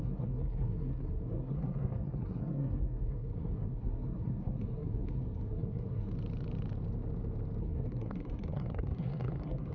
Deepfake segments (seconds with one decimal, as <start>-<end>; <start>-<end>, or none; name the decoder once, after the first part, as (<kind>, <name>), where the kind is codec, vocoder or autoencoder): 0.0-6.1 (codec, SNAC); 7.6-9.7

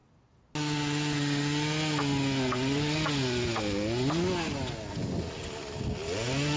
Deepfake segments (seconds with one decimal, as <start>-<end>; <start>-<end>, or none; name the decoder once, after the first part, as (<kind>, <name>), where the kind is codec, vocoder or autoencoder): none

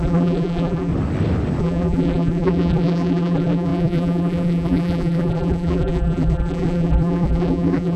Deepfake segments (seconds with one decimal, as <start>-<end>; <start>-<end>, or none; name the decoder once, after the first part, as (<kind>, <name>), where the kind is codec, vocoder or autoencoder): 0.0-0.9 (vocoder, BigVGAN v2); 1.6-8.0

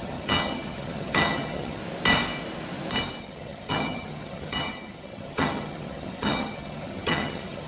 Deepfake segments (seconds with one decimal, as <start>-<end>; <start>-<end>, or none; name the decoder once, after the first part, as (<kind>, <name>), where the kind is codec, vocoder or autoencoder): 0.0-1.8 (vocoder, HiFi-GAN); 3.2-7.7

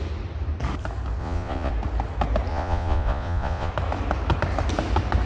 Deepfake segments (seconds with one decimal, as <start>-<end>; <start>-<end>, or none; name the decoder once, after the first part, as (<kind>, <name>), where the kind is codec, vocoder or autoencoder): 1.2-1.7 (vocoder, Vocos); 2.5-3.7

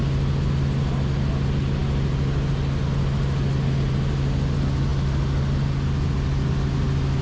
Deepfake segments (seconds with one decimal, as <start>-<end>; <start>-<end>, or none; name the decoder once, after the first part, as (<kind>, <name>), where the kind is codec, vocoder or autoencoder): none

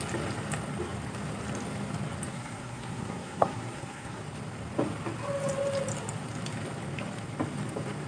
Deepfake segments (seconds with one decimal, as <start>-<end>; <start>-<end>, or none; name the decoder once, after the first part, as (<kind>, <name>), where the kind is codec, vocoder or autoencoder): 2.3-4.2 (codec, SNAC)